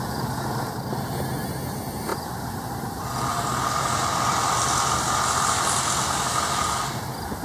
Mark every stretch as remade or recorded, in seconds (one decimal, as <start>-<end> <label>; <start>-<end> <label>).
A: 0.0-7.4 recorded